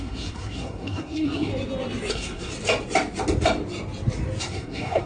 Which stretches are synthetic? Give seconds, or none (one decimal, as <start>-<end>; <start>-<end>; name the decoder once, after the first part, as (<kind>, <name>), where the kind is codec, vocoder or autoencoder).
0.0-1.5 (codec, SNAC); 2.1-2.5; 4.4-5.1